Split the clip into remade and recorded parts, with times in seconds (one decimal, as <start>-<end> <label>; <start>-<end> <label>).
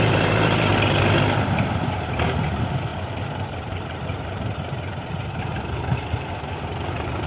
0.0-0.7 remade; 0.7-1.5 recorded; 1.5-7.3 remade